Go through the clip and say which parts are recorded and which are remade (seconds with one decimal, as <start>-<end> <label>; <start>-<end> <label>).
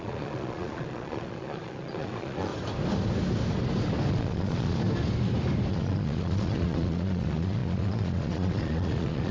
0.0-2.5 remade; 2.5-4.1 recorded; 4.1-4.8 remade; 4.8-5.7 recorded; 5.7-9.3 remade